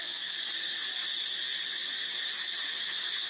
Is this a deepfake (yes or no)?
no